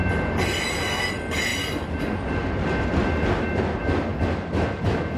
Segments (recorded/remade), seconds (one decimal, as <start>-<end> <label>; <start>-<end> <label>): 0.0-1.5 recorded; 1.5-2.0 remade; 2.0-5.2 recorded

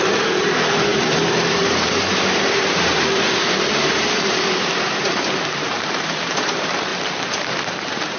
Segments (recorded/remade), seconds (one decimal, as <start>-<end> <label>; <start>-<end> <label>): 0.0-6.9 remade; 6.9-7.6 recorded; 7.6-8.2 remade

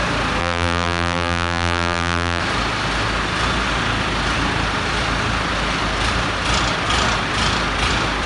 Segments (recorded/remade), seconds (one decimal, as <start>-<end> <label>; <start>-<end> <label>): 0.0-0.4 recorded; 0.4-2.4 remade; 2.4-8.3 recorded

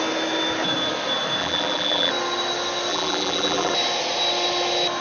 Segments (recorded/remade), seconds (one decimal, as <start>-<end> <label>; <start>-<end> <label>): 0.0-1.4 recorded; 1.4-2.1 remade; 2.1-2.9 recorded; 2.9-3.7 remade; 3.7-5.0 recorded